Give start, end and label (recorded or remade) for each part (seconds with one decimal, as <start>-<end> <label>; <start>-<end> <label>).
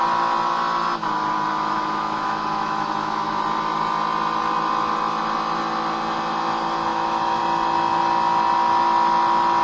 0.0-1.5 recorded; 1.5-3.4 remade; 3.4-6.9 recorded; 6.9-7.4 remade; 7.4-9.6 recorded